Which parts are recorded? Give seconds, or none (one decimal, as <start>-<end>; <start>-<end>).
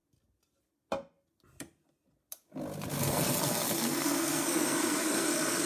0.0-3.0